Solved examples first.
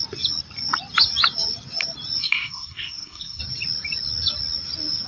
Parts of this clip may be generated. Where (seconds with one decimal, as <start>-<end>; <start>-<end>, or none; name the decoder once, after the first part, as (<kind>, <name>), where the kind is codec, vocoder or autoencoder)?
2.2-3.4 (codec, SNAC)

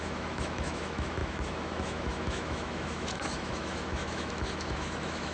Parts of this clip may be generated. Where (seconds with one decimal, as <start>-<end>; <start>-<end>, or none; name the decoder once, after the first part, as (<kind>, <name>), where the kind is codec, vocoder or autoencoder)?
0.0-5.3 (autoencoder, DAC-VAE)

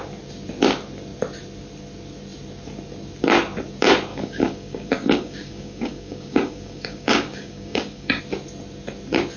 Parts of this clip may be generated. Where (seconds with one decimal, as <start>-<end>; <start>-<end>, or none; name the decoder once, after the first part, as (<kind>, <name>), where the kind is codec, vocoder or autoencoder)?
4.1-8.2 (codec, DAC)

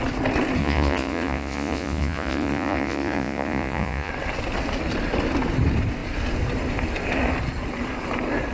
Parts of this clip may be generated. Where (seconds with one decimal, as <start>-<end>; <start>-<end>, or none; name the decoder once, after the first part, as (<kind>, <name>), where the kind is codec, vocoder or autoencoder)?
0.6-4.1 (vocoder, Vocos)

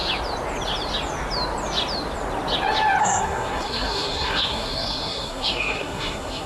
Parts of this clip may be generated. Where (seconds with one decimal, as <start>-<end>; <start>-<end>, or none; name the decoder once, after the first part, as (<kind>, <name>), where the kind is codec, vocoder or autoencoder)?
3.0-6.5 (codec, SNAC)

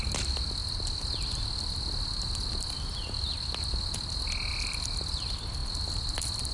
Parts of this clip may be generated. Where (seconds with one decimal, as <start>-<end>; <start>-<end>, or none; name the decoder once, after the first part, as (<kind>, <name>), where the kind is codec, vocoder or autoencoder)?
none

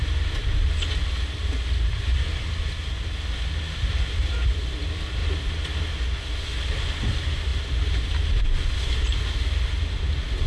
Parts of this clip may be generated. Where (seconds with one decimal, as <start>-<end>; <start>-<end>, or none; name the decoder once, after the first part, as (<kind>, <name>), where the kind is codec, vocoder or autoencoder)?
none